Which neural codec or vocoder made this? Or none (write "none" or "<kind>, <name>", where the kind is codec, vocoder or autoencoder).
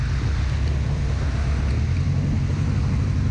none